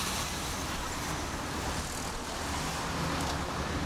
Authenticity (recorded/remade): recorded